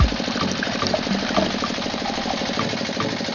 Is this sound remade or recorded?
recorded